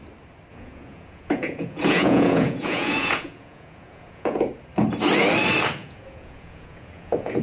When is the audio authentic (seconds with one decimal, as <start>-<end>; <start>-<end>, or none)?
0.0-0.5; 4.5-5.8